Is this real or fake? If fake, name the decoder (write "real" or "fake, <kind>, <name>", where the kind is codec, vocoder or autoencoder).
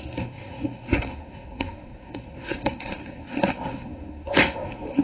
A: fake, codec, SNAC